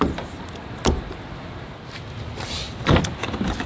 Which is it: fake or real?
real